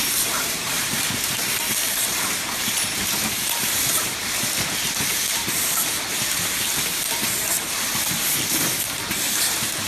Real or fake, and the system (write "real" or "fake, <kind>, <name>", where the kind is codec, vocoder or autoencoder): fake, vocoder, BigVGAN v2